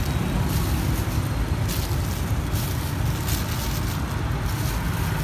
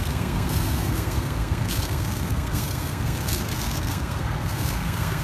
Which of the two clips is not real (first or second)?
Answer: second